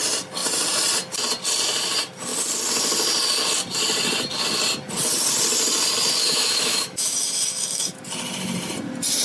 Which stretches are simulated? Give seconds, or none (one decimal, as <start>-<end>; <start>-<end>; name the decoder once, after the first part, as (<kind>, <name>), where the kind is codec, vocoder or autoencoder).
6.2-8.0 (autoencoder, DAC-VAE)